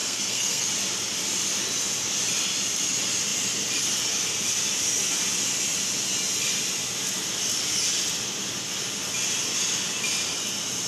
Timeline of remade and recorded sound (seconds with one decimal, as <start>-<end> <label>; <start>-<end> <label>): 0.0-0.7 remade; 0.7-10.9 recorded